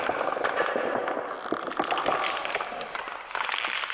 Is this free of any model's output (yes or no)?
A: yes